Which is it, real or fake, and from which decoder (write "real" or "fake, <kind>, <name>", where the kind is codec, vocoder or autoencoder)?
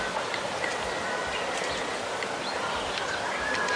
real